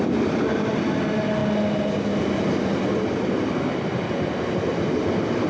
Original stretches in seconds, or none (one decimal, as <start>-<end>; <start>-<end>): 0.0-5.5